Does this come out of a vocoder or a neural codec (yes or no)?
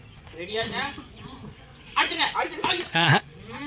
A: yes